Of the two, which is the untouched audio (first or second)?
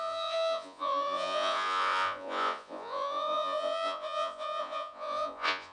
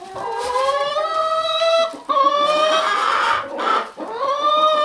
second